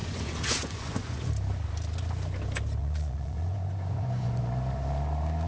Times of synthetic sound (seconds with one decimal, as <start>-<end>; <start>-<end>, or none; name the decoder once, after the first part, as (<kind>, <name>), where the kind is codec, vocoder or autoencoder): 0.0-1.3 (vocoder, Vocos); 2.8-4.4